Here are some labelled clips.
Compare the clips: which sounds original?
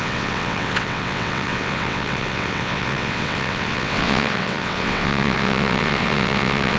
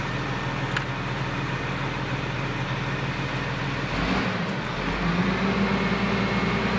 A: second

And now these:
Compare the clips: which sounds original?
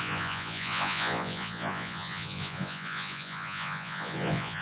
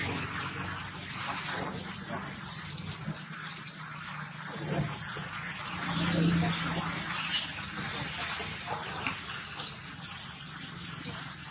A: second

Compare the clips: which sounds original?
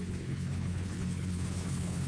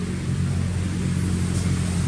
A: second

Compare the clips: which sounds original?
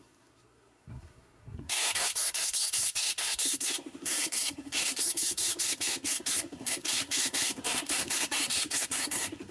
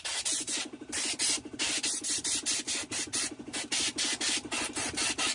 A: second